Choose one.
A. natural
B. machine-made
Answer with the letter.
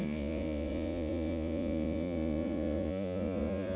B